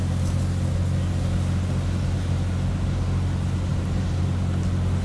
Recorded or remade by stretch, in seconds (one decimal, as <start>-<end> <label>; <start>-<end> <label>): 0.0-3.7 recorded; 3.7-4.2 remade; 4.2-5.0 recorded